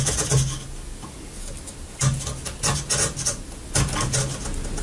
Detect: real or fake real